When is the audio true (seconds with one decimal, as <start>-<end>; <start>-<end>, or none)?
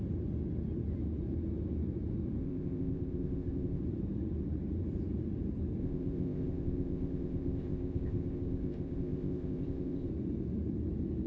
0.0-2.4; 3.8-5.8; 10.1-11.3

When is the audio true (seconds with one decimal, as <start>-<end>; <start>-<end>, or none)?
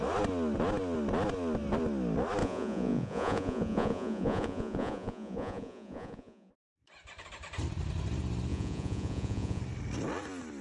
0.0-2.4; 6.5-8.5; 9.6-10.6